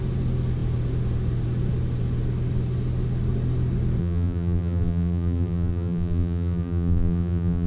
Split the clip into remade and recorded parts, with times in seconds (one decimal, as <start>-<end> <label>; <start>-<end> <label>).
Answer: 0.0-4.0 recorded; 4.0-7.7 remade